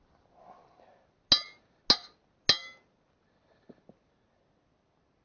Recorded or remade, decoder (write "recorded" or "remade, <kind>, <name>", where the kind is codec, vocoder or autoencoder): recorded